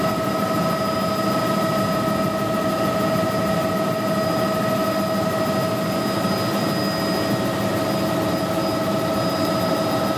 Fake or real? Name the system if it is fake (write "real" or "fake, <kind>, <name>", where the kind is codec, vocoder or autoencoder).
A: real